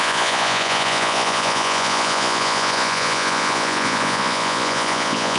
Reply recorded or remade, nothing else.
remade